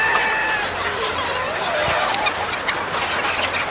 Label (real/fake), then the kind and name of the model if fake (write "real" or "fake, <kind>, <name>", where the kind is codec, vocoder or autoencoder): real